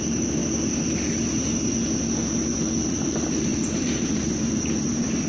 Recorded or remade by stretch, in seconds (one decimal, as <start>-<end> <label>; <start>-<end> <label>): 0.0-0.4 remade; 0.4-2.5 recorded; 2.5-5.3 remade